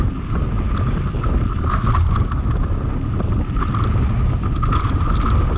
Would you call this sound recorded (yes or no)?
yes